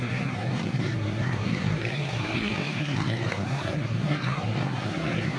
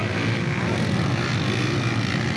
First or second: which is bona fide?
second